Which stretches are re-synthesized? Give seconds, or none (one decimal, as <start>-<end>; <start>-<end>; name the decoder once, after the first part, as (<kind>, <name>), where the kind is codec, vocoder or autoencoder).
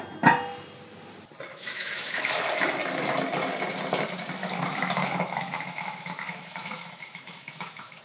1.5-2.4 (autoencoder, DAC-VAE); 4.4-8.0